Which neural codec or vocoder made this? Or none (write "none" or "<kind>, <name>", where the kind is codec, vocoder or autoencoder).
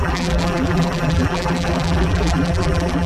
vocoder, BigVGAN v2